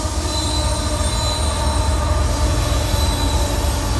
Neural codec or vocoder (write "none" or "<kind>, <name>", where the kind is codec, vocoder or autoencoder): none